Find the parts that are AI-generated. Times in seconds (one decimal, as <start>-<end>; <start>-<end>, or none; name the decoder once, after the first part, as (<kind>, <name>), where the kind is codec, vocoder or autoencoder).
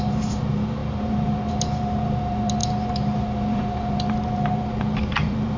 0.0-5.6 (vocoder, BigVGAN v2)